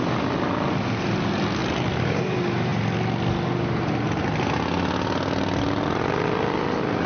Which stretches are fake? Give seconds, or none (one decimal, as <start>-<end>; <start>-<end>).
none